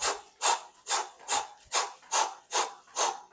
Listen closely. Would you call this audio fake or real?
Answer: real